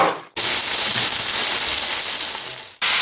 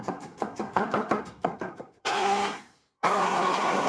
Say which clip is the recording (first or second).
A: first